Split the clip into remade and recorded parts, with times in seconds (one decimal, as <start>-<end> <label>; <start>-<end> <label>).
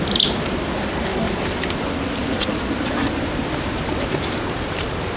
0.0-5.2 recorded